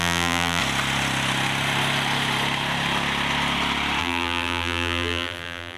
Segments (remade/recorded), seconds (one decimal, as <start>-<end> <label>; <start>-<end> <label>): 0.0-0.6 remade; 0.6-4.0 recorded; 4.0-5.8 remade